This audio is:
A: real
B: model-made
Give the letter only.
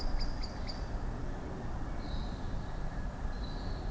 A